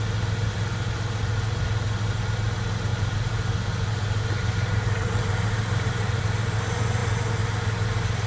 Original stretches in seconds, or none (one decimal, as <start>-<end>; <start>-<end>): 0.0-2.9; 6.2-8.3

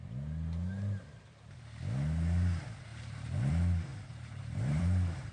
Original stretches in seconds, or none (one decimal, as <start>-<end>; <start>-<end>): 0.0-2.9; 3.5-3.9

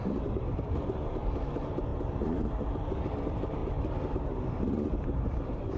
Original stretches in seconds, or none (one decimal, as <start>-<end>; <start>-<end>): none

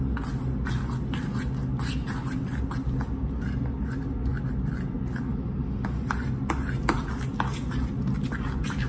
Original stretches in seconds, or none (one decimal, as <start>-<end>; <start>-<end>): 0.0-8.9

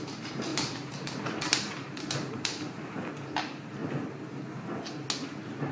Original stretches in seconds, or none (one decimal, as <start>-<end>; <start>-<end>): 3.8-5.7